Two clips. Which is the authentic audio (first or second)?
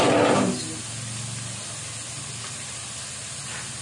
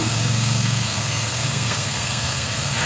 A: first